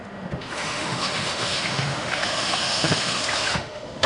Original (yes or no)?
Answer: no